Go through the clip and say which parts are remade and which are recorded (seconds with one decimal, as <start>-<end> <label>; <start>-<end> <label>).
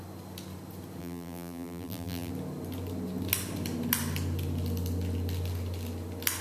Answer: 0.0-1.0 recorded; 1.0-2.3 remade; 2.3-6.4 recorded